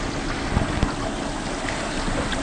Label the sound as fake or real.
real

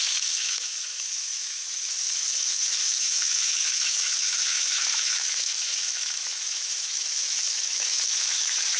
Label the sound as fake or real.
fake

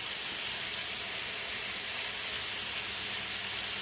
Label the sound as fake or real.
real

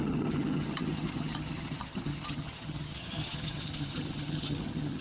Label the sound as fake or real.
fake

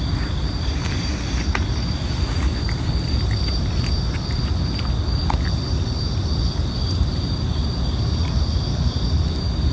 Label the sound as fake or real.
real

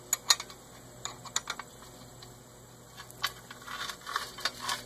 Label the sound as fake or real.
real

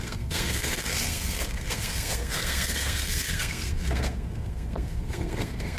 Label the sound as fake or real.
fake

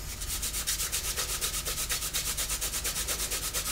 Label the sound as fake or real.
real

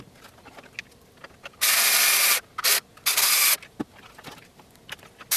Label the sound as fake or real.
real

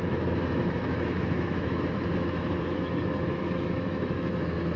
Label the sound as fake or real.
fake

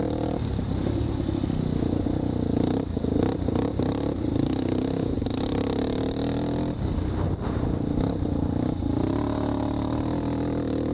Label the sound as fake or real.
real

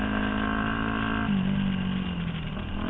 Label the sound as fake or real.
real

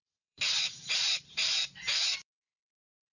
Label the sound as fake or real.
fake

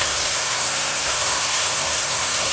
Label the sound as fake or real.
fake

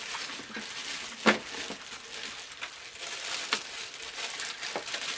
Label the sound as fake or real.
real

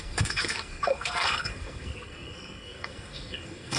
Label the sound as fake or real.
fake